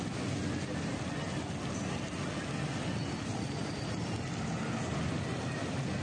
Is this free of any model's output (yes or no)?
yes